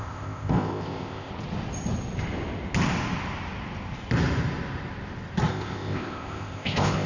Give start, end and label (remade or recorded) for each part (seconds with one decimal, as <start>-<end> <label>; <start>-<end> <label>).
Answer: 0.0-1.3 remade; 1.3-5.5 recorded; 5.5-7.1 remade